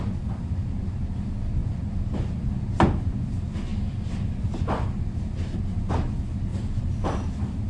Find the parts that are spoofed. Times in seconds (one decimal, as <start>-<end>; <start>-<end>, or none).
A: none